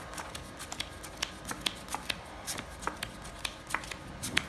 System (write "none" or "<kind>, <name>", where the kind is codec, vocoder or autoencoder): none